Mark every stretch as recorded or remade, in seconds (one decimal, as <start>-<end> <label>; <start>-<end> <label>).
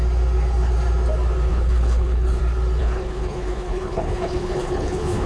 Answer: 0.0-1.5 recorded; 1.5-2.4 remade; 2.4-2.8 recorded; 2.8-5.3 remade